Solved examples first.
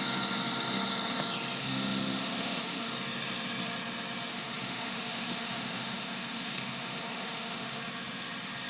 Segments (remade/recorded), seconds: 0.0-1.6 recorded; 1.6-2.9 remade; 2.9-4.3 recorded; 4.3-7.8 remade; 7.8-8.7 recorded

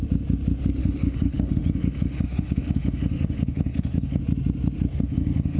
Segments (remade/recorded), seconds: 0.0-0.8 recorded; 0.8-4.2 remade; 4.2-4.9 recorded; 4.9-5.6 remade

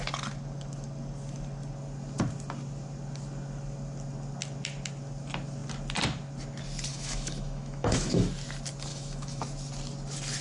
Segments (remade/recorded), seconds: 0.0-6.9 recorded; 6.9-8.3 remade; 8.3-8.9 recorded; 8.9-9.4 remade; 9.4-10.4 recorded

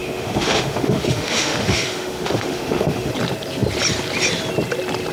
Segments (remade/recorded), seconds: 0.0-3.1 remade; 3.1-5.1 recorded

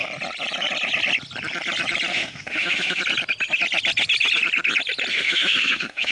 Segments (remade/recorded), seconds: 0.0-2.1 recorded; 2.1-3.0 remade; 3.0-5.1 recorded; 5.1-6.1 remade

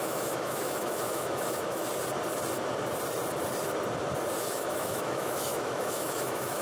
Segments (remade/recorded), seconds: 0.0-1.8 remade; 1.8-4.4 recorded; 4.4-6.6 remade